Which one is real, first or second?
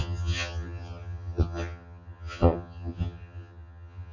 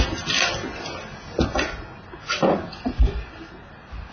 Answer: second